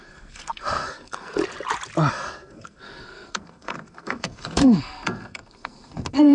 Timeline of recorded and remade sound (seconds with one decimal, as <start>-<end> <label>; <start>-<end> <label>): 0.0-1.4 remade; 1.4-2.1 recorded; 2.1-6.3 remade